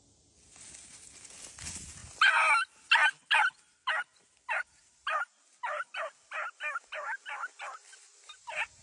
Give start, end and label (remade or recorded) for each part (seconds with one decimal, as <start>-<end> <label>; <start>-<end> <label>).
0.0-8.8 recorded